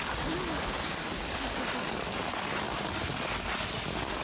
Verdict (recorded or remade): recorded